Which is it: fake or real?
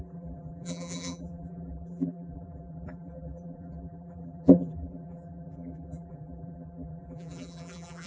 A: fake